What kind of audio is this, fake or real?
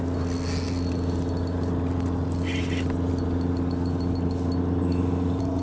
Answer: real